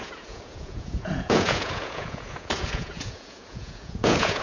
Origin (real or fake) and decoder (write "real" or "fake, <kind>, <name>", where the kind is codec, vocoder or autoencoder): fake, vocoder, Vocos